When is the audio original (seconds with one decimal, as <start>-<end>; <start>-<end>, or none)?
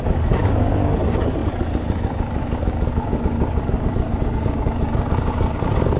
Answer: none